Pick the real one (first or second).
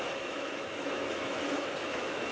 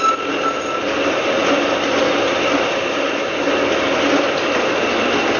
second